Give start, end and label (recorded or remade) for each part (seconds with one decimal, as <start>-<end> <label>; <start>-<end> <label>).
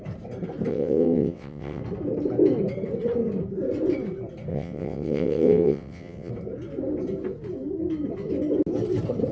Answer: 0.0-0.7 recorded; 0.7-1.8 remade; 1.8-4.5 recorded; 4.5-6.3 remade; 6.3-9.3 recorded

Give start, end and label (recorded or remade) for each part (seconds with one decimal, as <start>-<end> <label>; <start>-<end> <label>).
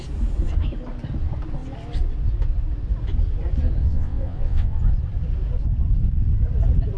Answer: 0.0-3.8 recorded; 3.8-4.8 remade; 4.8-7.0 recorded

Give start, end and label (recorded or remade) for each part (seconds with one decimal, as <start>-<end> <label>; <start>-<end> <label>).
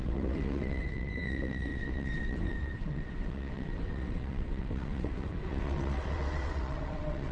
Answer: 0.0-7.3 remade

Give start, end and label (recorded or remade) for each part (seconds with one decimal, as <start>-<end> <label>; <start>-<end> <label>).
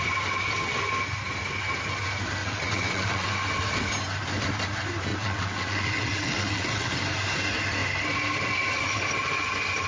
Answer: 0.0-2.4 recorded; 2.4-3.3 remade; 3.3-5.1 recorded; 5.1-6.9 remade; 6.9-9.9 recorded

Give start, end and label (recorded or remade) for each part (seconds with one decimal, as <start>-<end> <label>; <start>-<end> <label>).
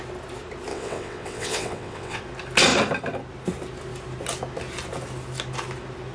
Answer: 0.0-0.7 recorded; 0.7-2.2 remade; 2.2-6.1 recorded